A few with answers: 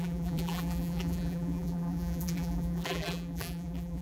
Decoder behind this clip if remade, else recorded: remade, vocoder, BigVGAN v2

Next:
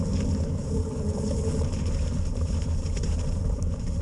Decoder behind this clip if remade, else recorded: remade, vocoder, BigVGAN v2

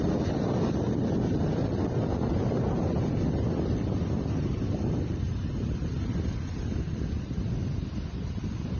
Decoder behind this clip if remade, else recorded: remade, vocoder, BigVGAN v2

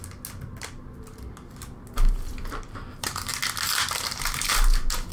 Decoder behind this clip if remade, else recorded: recorded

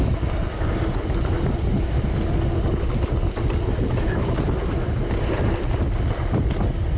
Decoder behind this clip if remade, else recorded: recorded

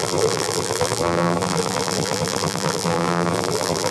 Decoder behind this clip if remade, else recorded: remade, vocoder, BigVGAN v2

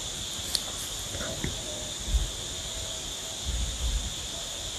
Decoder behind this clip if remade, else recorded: recorded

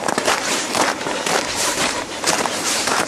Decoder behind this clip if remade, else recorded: remade, vocoder, BigVGAN v2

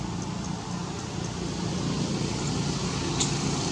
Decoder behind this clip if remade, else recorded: recorded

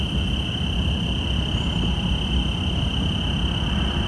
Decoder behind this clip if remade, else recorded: recorded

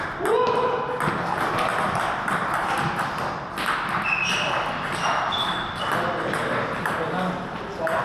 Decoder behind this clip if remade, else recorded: recorded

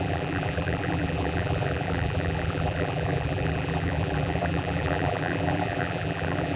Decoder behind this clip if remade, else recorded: remade, vocoder, BigVGAN v2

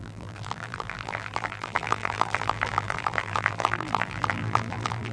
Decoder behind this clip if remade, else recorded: remade, vocoder, BigVGAN v2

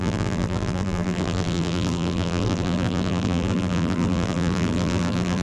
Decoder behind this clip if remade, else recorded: remade, vocoder, BigVGAN v2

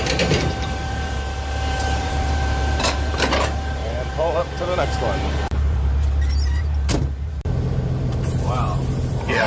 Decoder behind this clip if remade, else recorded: remade, vocoder, BigVGAN v2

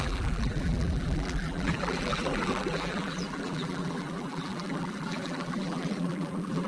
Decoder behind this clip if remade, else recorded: remade, vocoder, BigVGAN v2